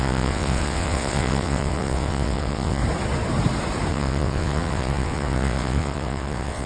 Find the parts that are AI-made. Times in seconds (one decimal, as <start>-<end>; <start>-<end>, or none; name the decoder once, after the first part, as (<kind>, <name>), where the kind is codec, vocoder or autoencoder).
0.0-2.8 (vocoder, WaveNeXt); 3.9-6.7